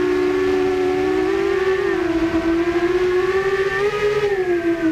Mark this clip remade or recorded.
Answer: recorded